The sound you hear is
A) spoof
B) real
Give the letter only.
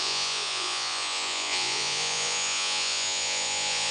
A